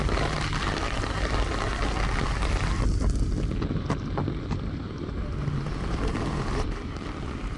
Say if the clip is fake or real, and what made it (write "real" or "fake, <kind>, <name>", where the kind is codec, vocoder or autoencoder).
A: real